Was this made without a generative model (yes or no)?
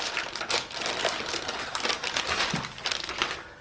yes